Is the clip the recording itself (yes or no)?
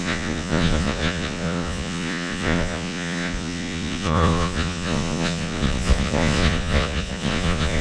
no